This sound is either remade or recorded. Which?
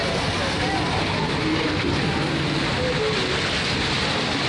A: recorded